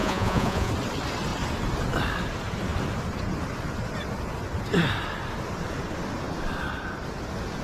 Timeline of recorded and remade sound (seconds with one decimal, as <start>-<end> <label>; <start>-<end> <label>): 0.0-0.7 remade; 0.7-7.6 recorded